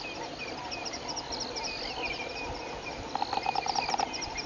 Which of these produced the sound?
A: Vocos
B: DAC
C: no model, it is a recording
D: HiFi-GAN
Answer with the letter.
C